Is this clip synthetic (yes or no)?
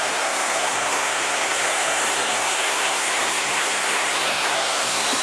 yes